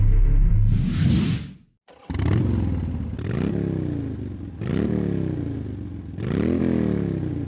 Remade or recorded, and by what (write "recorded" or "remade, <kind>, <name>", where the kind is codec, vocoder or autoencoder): recorded